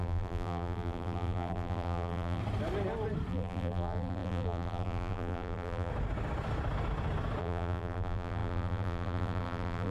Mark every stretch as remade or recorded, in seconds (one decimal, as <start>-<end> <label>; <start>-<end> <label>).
0.0-2.4 remade; 2.4-3.3 recorded; 3.3-5.9 remade; 5.9-7.4 recorded; 7.4-9.9 remade